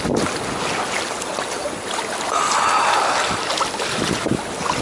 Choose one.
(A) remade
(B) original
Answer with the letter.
B